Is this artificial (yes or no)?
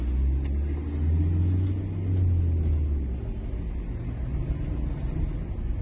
no